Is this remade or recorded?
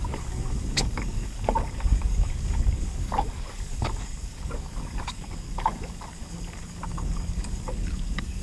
remade